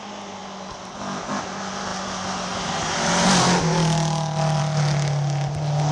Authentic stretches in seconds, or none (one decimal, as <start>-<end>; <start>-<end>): 0.0-5.9